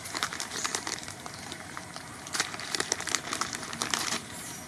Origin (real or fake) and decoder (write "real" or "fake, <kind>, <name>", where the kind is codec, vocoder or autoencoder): fake, vocoder, BigVGAN v2